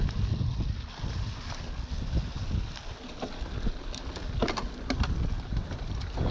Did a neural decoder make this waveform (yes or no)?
no